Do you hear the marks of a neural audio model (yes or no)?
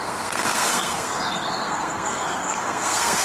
yes